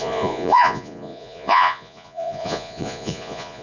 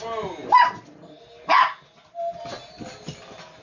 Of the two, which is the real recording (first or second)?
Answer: second